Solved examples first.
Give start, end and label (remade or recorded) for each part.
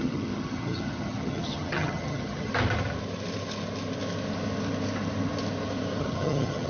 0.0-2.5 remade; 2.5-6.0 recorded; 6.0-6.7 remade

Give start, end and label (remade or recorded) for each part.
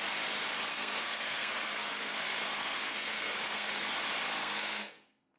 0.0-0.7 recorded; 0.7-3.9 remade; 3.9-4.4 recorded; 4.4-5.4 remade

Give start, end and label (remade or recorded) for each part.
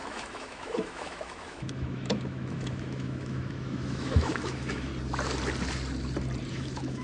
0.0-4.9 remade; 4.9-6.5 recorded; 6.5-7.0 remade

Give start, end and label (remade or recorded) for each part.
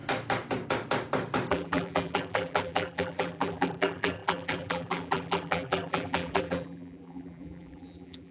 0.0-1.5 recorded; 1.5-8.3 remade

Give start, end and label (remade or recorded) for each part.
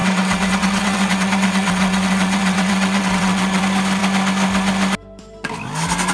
0.0-3.6 remade; 3.6-6.1 recorded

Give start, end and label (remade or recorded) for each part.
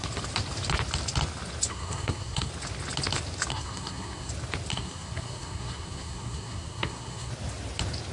0.0-1.7 recorded; 1.7-2.5 remade; 2.5-3.5 recorded; 3.5-4.3 remade; 4.3-4.7 recorded; 4.7-7.3 remade; 7.3-8.1 recorded